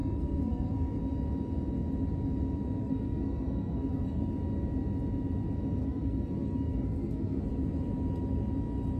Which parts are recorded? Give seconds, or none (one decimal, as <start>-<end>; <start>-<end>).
1.0-2.8; 4.2-5.8; 7.5-9.0